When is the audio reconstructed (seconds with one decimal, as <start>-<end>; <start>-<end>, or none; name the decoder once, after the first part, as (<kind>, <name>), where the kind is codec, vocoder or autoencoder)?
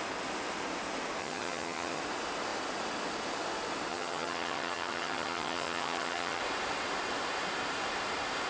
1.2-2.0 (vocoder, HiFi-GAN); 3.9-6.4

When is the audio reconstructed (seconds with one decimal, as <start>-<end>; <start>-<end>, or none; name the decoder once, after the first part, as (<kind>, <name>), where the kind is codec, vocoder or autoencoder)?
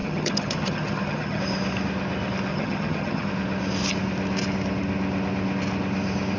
0.0-1.4 (vocoder, HiFi-GAN); 2.5-3.3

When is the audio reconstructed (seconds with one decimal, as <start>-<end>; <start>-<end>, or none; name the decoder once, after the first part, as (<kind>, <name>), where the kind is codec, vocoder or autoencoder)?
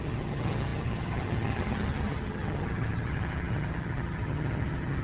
0.0-5.0 (vocoder, HiFi-GAN)